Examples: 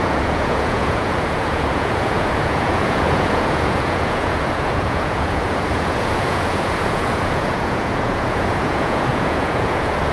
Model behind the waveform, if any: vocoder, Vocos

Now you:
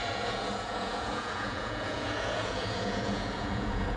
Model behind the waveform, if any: vocoder, Vocos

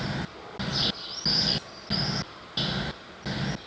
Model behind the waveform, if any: none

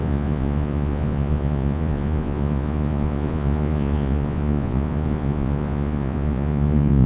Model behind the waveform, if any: vocoder, Vocos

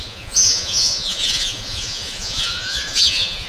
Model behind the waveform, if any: vocoder, Vocos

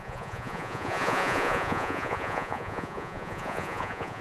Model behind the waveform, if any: vocoder, Vocos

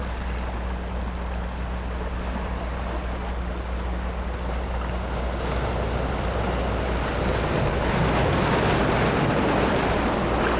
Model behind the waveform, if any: none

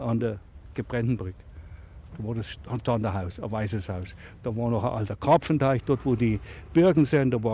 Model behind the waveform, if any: none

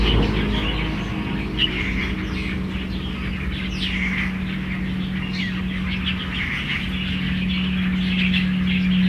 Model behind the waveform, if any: none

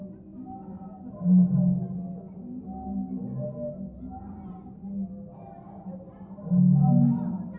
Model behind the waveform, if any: none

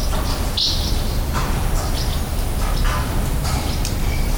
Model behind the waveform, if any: none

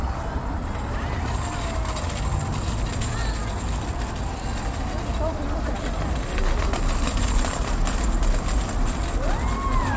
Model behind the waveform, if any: none